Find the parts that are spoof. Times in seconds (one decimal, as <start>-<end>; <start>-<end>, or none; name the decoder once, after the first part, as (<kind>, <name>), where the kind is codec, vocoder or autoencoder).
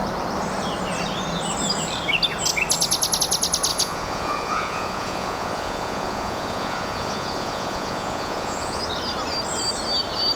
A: 3.7-8.8 (vocoder, Vocos)